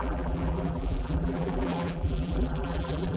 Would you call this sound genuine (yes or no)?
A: no